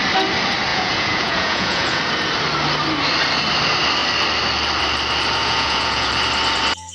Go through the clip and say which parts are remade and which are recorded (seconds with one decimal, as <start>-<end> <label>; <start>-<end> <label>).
0.0-0.7 recorded; 0.7-2.0 remade; 2.0-5.4 recorded; 5.4-6.1 remade; 6.1-6.9 recorded